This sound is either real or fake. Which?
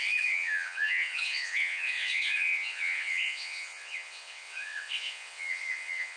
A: fake